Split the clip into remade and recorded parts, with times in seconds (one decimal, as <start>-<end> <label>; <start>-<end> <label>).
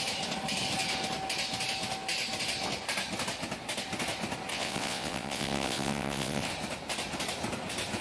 0.0-4.5 recorded; 4.5-6.5 remade; 6.5-8.0 recorded